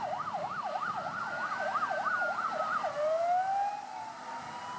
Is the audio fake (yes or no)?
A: no